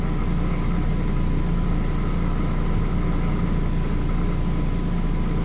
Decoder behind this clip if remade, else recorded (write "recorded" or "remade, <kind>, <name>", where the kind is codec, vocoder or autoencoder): recorded